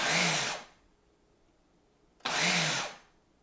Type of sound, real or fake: real